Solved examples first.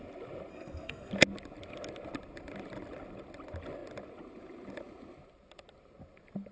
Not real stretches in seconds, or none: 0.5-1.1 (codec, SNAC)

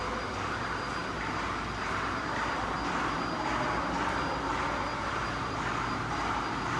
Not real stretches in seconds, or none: none

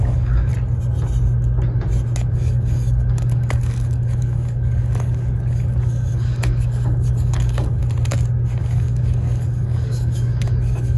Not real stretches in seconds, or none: 0.0-0.5 (codec, DAC); 2.3-7.8; 8.6-11.0

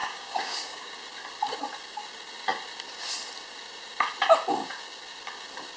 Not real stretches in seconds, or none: 0.0-0.9 (codec, DAC)